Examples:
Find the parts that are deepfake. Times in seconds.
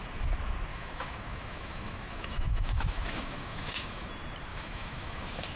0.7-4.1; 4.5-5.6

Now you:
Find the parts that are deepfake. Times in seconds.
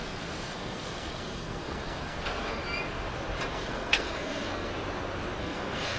0.0-2.6; 3.5-4.7; 5.4-6.0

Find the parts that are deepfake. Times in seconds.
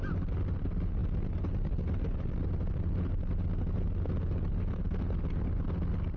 none